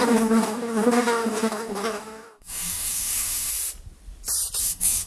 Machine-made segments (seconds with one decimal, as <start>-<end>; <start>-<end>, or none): 0.0-3.5; 4.6-5.1